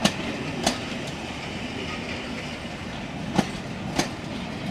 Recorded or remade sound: recorded